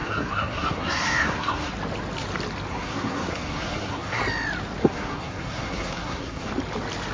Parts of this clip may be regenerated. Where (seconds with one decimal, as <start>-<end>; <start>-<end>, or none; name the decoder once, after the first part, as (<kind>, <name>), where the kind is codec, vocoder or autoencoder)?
0.0-1.7 (codec, SNAC); 2.7-4.2; 4.8-6.5